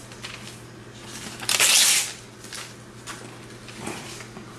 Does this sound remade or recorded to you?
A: recorded